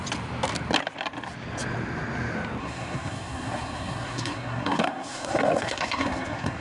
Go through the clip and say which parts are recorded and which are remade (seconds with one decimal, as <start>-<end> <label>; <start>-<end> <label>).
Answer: 0.0-2.6 recorded; 2.6-6.6 remade